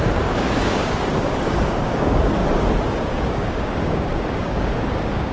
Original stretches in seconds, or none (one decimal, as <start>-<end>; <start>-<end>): 2.4-3.0